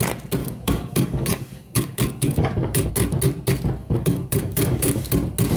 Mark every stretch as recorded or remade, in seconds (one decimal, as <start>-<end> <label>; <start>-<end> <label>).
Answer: 0.0-0.4 recorded; 0.4-2.9 remade; 2.9-3.8 recorded; 3.8-5.1 remade; 5.1-5.6 recorded